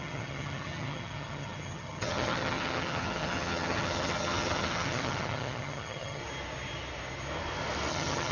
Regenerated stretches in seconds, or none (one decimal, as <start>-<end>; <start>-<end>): 0.0-6.2; 7.9-8.3